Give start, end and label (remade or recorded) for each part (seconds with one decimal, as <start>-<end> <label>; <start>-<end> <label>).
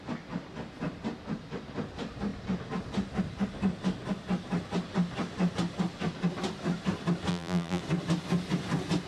0.0-7.3 recorded; 7.3-7.8 remade; 7.8-9.1 recorded